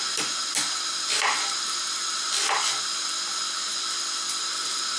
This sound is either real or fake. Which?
real